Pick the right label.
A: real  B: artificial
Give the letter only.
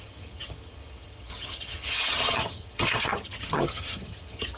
B